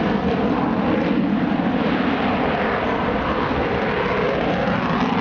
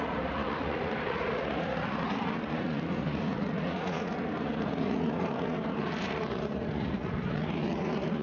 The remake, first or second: second